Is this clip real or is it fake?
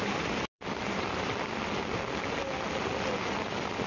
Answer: real